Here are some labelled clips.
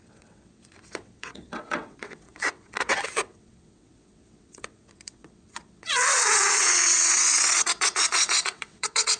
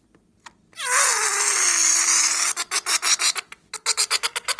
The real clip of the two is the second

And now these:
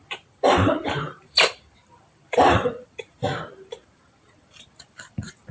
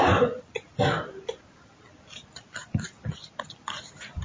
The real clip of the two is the second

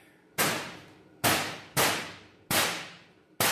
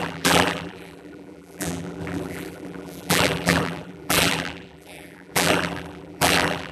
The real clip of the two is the first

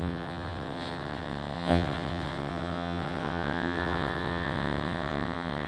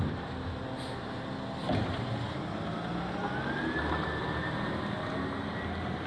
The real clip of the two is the second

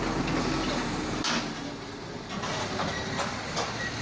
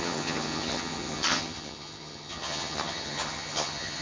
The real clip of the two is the first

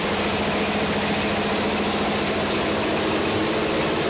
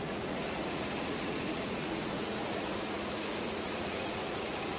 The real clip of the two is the first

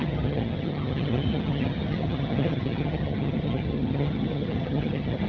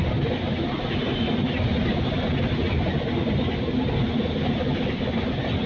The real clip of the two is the second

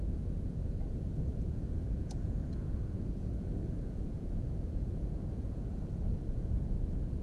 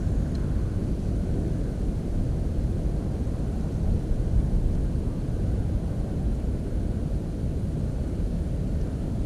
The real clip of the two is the second